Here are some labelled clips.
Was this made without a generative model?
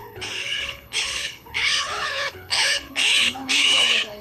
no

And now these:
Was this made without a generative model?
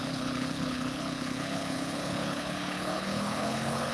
no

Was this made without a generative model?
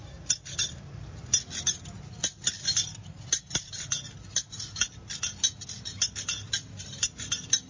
yes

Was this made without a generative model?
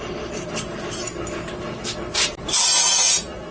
yes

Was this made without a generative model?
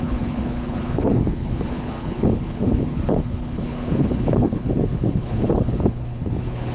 no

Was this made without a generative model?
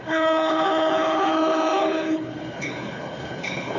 no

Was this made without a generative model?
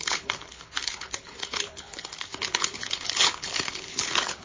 no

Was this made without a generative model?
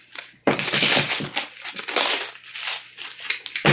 yes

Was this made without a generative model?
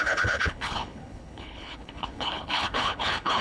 no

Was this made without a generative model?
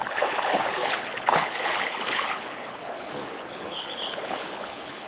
no